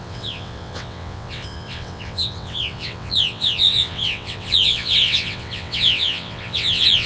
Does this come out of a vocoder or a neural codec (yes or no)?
yes